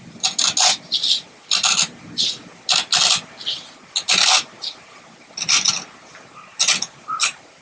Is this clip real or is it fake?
real